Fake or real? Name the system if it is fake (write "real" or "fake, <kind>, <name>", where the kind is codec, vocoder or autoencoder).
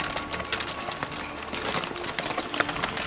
real